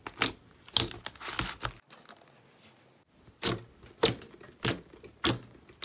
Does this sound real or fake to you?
real